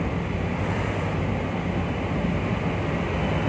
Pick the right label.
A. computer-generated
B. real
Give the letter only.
B